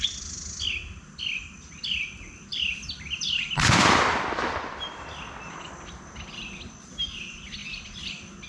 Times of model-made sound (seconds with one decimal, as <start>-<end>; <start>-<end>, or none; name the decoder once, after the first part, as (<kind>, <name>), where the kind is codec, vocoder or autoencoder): 2.5-6.4 (vocoder, BigVGAN v2)